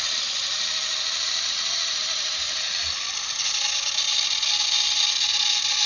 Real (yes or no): yes